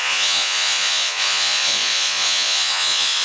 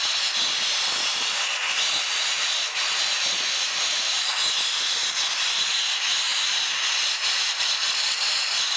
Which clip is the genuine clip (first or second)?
second